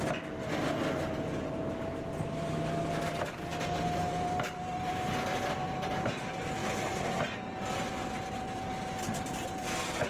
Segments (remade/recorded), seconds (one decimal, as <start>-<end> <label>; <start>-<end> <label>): 0.0-10.1 recorded